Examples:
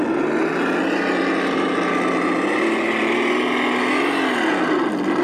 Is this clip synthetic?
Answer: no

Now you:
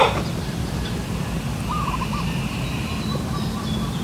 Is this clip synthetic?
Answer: no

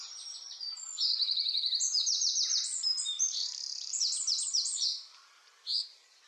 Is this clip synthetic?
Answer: yes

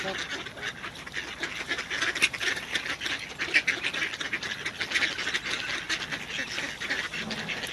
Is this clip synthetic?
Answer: no